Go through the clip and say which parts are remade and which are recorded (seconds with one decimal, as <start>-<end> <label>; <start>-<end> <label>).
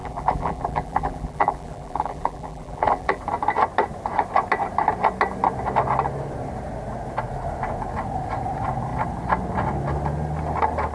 0.0-3.2 remade; 3.2-10.9 recorded